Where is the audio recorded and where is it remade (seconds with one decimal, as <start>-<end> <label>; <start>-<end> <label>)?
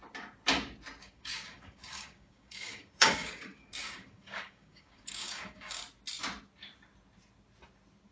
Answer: 0.0-1.0 recorded; 1.0-5.8 remade; 5.8-8.1 recorded